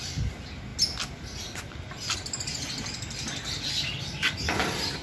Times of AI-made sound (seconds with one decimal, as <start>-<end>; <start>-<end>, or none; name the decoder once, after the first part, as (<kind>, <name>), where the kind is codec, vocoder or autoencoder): none